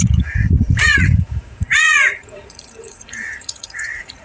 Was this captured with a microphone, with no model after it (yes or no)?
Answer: no